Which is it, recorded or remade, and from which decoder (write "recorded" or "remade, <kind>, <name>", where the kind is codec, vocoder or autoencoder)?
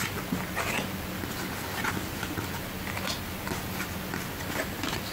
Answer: recorded